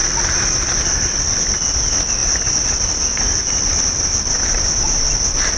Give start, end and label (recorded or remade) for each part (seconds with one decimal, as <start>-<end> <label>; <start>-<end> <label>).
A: 0.0-5.6 recorded